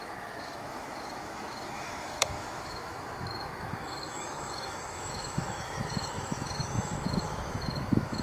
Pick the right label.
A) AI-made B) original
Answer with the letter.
A